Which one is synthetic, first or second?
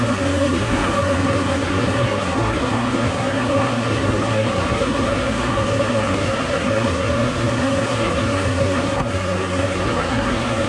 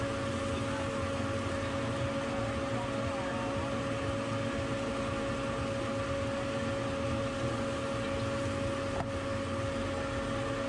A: first